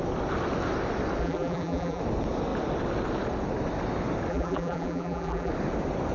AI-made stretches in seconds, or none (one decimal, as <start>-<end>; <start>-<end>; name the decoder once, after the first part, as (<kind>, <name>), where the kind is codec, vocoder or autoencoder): 1.2-2.0 (vocoder, BigVGAN v2); 4.3-5.5